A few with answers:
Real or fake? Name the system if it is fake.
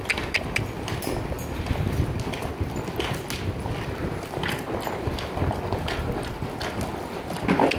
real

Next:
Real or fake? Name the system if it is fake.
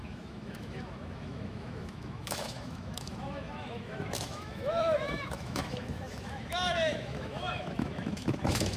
fake, autoencoder, DAC-VAE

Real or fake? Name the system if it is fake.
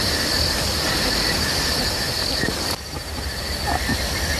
real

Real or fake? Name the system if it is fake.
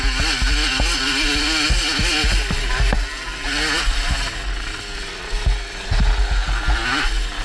real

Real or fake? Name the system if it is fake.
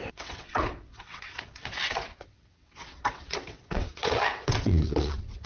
fake, vocoder, WaveNeXt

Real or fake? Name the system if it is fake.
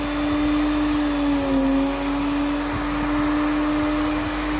real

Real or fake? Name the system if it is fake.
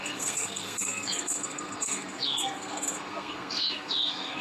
fake, codec, SNAC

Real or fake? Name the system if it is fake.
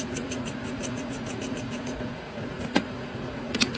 fake, vocoder, Vocos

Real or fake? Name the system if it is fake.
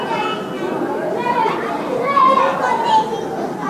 real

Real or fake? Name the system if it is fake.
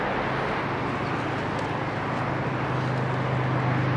real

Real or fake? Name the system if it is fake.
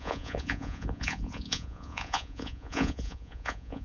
fake, vocoder, Vocos